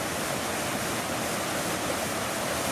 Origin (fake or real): real